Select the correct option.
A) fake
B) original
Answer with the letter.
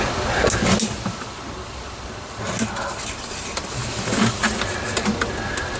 B